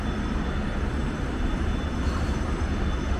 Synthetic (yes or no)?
no